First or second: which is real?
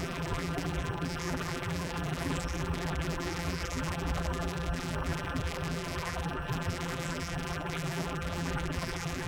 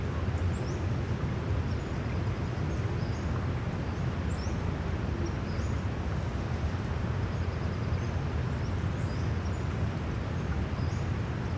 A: second